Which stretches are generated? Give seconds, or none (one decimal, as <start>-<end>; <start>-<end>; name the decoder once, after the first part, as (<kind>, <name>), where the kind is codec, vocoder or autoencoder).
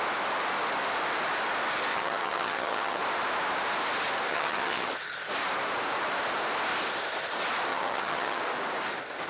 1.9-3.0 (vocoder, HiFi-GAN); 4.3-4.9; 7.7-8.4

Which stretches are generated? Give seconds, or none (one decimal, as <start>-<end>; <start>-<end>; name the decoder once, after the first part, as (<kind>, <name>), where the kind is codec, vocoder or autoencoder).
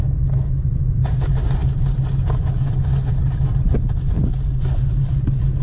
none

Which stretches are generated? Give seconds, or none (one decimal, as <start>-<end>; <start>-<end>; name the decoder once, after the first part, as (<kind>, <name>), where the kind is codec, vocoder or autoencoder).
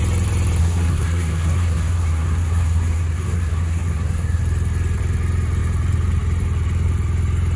0.6-4.4 (codec, SNAC)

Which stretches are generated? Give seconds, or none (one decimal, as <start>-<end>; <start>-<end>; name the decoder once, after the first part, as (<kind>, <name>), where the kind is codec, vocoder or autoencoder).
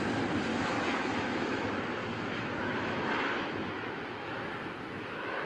0.5-1.7 (autoencoder, DAC-VAE); 2.1-5.5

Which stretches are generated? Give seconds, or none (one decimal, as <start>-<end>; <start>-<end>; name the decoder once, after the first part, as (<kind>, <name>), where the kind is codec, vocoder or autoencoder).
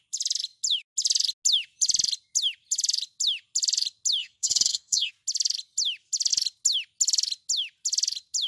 4.2-5.1 (codec, SNAC)